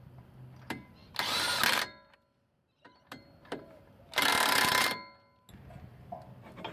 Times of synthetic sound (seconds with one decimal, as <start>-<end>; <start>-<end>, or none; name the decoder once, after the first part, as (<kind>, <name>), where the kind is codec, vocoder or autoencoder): none